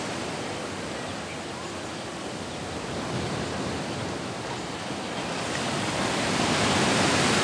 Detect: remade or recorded recorded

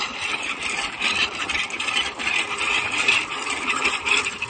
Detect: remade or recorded remade